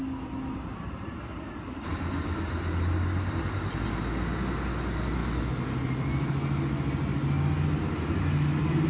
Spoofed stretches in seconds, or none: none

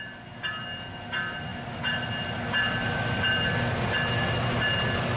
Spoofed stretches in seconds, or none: none

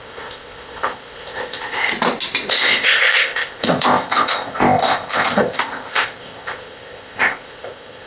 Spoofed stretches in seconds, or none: 0.0-1.9 (codec, ZipCodec); 2.5-8.1

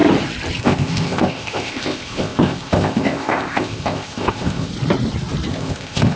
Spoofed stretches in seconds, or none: 0.6-4.7 (codec, ZipCodec); 5.5-6.2